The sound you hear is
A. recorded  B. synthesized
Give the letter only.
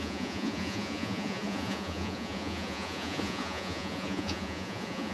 B